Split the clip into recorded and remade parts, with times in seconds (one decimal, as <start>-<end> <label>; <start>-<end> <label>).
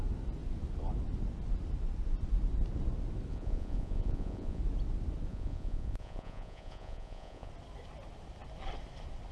0.0-3.3 recorded; 3.3-4.6 remade; 4.6-5.3 recorded; 5.3-7.5 remade; 7.5-9.3 recorded